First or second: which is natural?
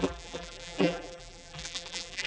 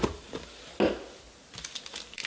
second